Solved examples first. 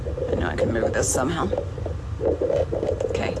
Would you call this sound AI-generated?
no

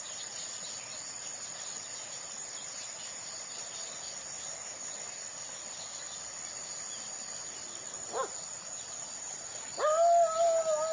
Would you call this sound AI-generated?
no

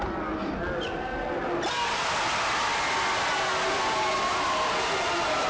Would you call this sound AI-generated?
no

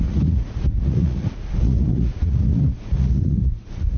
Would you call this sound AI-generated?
yes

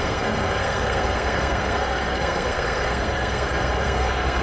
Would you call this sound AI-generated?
yes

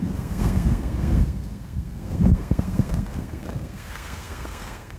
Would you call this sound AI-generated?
yes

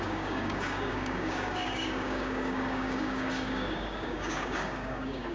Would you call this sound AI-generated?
yes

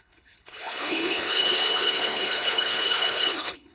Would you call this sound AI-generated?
yes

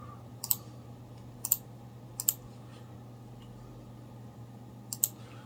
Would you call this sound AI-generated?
no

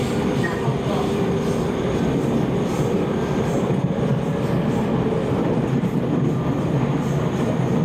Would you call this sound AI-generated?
yes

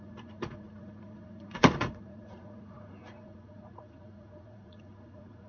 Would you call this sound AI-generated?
yes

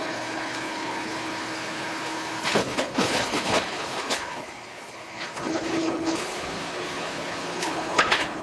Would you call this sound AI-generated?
yes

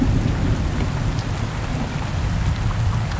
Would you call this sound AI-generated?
no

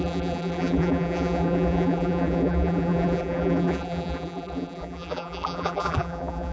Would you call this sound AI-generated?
yes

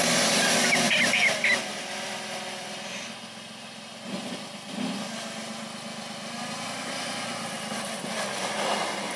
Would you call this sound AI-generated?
no